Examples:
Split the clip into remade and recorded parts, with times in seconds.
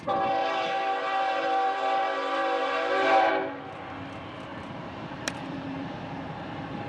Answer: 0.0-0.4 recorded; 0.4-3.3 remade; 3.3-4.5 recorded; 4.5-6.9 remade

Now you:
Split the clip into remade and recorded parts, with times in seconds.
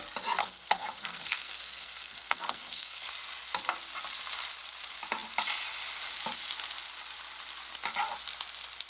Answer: 0.0-0.4 recorded; 0.4-3.1 remade; 3.1-8.9 recorded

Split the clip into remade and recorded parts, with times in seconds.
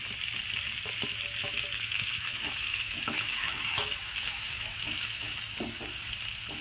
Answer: 0.0-1.4 recorded; 1.4-5.4 remade; 5.4-6.6 recorded